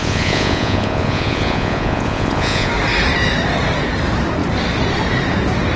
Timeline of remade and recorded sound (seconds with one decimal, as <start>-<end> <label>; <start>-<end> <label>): 0.0-2.7 remade; 2.7-5.8 recorded